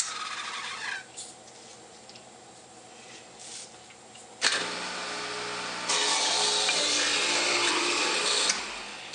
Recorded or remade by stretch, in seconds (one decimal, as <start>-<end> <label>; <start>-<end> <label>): 0.0-9.1 recorded